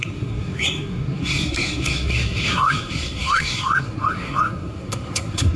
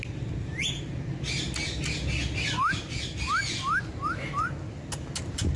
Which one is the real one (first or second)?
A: second